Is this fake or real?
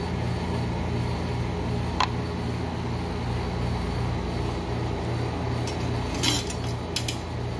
real